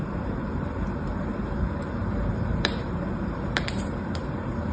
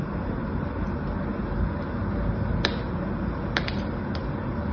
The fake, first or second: first